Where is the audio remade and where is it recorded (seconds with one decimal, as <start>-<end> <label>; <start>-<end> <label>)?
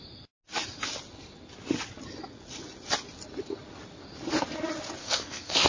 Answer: 0.0-5.0 recorded; 5.0-5.7 remade